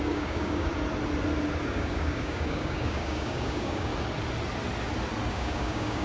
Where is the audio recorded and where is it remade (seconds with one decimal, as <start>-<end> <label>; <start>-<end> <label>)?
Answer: 0.0-0.7 remade; 0.7-1.6 recorded; 1.6-3.9 remade; 3.9-5.3 recorded; 5.3-6.0 remade